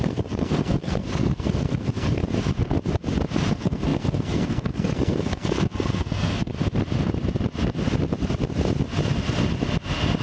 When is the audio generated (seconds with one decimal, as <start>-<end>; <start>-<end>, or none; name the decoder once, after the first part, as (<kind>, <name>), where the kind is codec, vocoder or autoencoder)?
0.0-2.2 (codec, SNAC); 3.5-6.5